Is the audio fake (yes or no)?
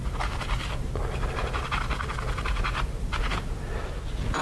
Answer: no